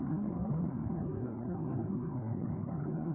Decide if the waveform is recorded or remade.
remade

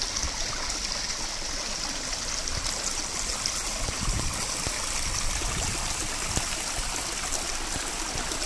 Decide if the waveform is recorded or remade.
recorded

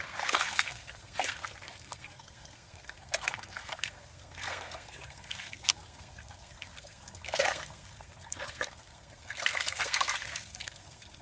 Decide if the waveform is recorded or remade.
remade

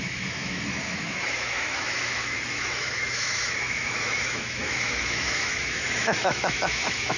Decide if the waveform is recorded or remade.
remade